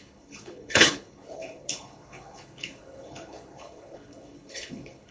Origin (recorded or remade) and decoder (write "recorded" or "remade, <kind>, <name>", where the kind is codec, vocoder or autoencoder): remade, codec, HILCodec